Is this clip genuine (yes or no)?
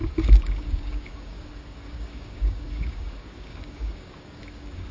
no